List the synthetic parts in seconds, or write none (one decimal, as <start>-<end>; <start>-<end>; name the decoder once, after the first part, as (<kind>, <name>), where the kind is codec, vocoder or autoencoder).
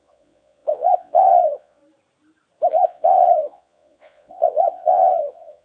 0.0-1.8 (vocoder, Vocos); 2.7-5.6